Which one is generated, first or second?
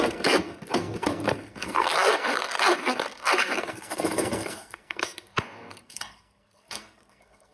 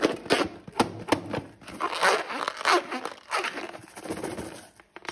first